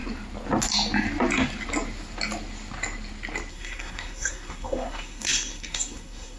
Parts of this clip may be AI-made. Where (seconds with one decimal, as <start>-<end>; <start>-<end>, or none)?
3.5-6.4